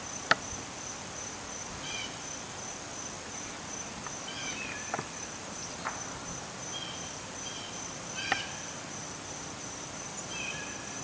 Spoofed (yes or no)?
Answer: yes